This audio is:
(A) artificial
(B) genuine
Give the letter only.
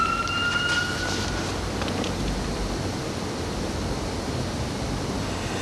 B